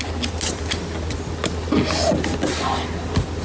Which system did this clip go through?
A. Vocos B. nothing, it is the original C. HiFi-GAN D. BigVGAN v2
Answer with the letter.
B